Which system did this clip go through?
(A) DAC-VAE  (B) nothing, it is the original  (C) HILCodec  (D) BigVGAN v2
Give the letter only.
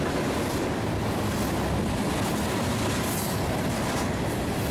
B